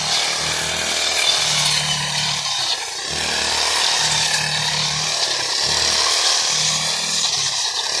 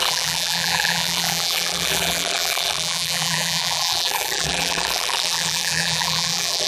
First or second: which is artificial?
second